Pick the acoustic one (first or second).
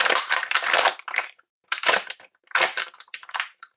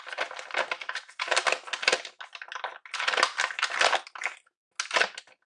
second